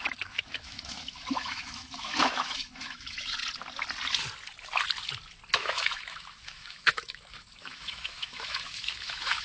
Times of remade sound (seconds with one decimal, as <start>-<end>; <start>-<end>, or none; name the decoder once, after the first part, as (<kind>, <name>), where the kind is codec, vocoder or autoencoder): 0.0-3.4 (autoencoder, DAC-VAE); 5.5-9.4